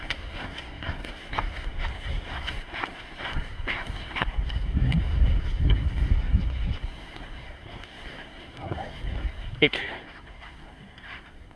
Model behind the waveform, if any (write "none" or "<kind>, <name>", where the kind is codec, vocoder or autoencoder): codec, SNAC